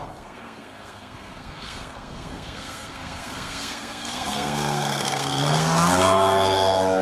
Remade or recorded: remade